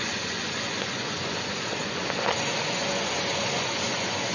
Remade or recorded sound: remade